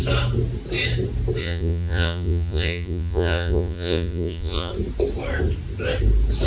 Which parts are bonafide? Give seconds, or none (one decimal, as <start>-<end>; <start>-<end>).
0.0-1.4; 4.7-6.5